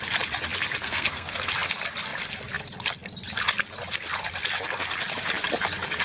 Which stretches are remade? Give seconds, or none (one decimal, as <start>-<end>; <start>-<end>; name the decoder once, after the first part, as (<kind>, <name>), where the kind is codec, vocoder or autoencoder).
0.8-1.5 (codec, SNAC)